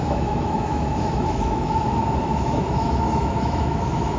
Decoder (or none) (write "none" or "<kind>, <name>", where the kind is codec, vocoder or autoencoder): autoencoder, DAC-VAE